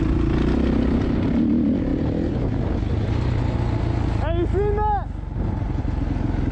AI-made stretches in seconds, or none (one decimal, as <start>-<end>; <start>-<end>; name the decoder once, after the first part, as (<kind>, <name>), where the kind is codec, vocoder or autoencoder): none